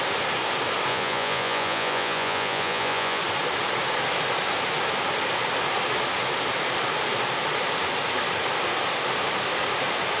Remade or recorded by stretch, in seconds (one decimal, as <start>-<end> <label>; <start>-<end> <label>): 0.0-0.9 recorded; 0.9-3.2 remade; 3.2-10.2 recorded